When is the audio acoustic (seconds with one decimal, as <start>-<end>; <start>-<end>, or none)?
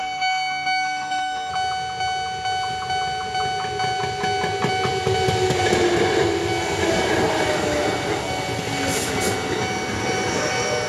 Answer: 1.5-10.9